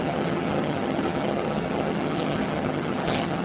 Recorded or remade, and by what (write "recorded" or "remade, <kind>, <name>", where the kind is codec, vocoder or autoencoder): remade, vocoder, HiFi-GAN